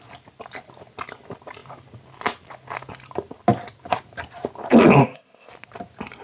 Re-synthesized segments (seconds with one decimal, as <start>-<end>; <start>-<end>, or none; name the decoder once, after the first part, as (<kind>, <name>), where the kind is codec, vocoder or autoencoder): 5.0-5.5 (codec, ZipCodec)